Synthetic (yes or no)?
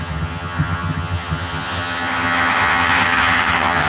yes